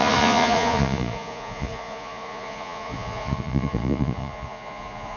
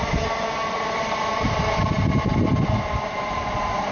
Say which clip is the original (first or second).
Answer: second